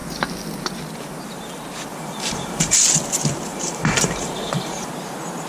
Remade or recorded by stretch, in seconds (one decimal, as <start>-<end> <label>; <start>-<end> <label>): 0.0-1.9 recorded; 1.9-2.8 remade; 2.8-3.5 recorded; 3.5-4.9 remade; 4.9-5.5 recorded